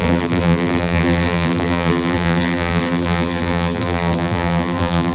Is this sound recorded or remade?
remade